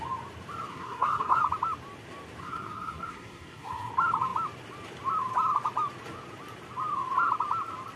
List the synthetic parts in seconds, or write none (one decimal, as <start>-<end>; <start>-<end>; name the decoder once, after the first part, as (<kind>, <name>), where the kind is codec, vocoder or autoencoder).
0.7-1.4 (codec, SNAC); 2.4-3.9